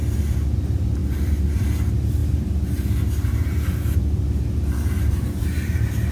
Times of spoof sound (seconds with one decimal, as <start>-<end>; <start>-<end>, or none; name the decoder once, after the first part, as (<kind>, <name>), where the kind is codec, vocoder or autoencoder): 2.2-6.1 (vocoder, BigVGAN v2)